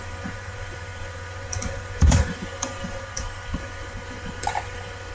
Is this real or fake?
fake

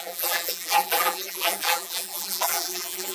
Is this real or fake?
fake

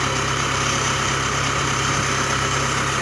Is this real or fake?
fake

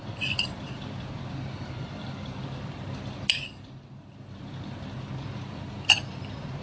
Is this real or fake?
fake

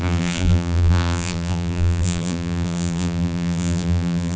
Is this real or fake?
fake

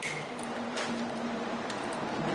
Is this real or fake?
fake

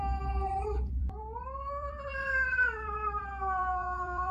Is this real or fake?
fake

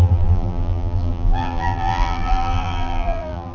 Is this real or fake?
fake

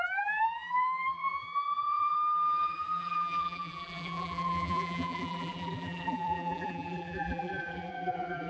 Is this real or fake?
fake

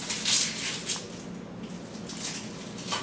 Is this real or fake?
real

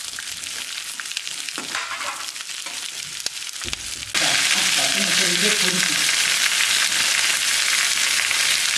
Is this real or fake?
real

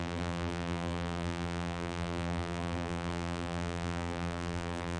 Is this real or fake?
fake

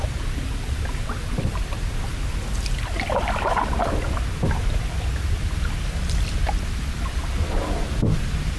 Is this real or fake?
real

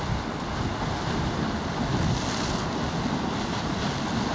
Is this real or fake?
real